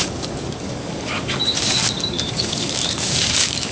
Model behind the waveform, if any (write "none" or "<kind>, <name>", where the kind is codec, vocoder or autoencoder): codec, DAC